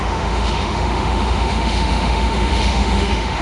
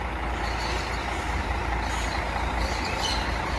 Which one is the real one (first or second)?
second